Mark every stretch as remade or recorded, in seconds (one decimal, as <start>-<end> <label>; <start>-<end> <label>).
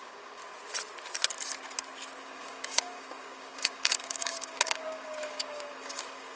0.0-0.4 remade; 0.4-2.2 recorded; 2.2-6.4 remade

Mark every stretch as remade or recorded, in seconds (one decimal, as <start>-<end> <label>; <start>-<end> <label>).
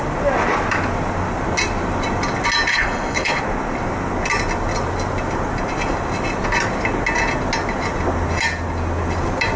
0.0-2.7 recorded; 2.7-3.4 remade; 3.4-9.6 recorded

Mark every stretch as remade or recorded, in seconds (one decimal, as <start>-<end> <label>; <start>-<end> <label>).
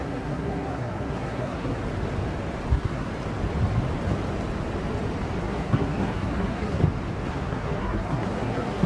0.0-1.8 remade; 1.8-2.7 recorded; 2.7-3.1 remade; 3.1-5.4 recorded; 5.4-6.8 remade; 6.8-7.3 recorded; 7.3-8.9 remade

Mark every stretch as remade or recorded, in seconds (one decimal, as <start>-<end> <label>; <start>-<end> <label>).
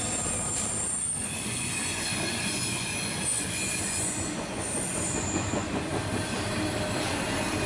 0.0-1.2 recorded; 1.2-5.8 remade; 5.8-7.7 recorded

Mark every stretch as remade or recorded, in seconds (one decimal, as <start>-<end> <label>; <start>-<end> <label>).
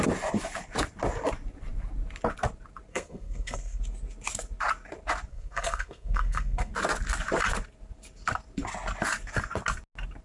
0.0-2.9 recorded; 2.9-3.8 remade; 3.8-5.3 recorded; 5.3-6.7 remade; 6.7-10.2 recorded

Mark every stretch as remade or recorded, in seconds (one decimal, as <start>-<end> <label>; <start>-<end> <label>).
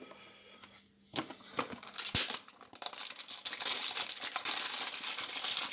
0.0-1.3 recorded; 1.3-4.7 remade; 4.7-5.7 recorded